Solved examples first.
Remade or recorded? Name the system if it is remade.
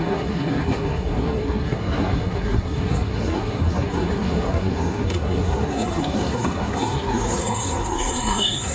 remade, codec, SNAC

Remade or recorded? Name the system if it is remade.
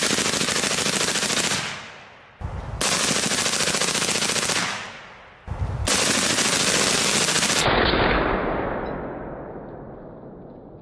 recorded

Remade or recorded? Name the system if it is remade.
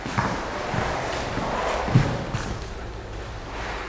recorded